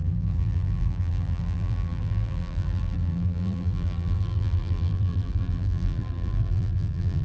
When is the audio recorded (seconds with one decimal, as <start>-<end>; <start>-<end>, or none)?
none